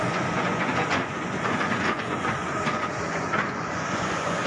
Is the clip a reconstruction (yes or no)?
yes